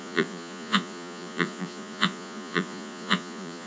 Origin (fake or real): fake